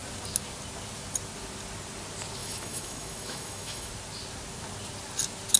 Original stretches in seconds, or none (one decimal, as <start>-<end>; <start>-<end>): 0.0-2.4; 3.9-5.6